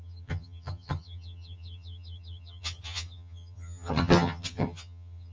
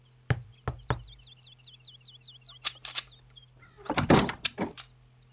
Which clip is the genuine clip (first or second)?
second